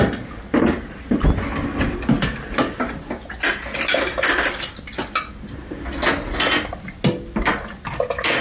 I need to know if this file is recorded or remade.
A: recorded